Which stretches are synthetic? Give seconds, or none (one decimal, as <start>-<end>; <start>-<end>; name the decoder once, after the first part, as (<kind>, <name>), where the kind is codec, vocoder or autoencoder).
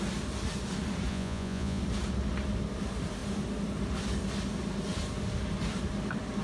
1.1-1.8 (vocoder, Vocos)